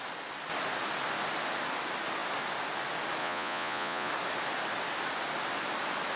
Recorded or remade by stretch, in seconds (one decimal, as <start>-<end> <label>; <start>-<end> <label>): 0.0-3.2 recorded; 3.2-4.1 remade; 4.1-6.2 recorded